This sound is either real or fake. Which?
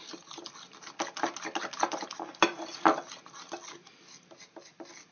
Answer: real